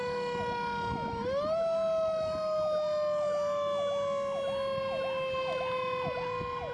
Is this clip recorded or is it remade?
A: recorded